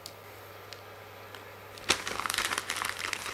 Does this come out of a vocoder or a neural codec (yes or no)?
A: no